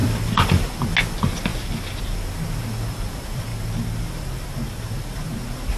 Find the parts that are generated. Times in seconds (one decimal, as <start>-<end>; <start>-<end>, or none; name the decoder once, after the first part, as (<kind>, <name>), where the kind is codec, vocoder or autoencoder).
none